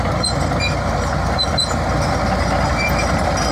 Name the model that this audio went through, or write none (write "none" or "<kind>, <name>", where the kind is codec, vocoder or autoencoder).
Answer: none